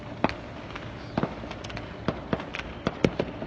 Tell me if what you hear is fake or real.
fake